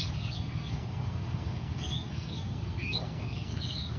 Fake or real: fake